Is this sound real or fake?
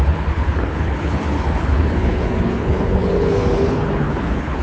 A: fake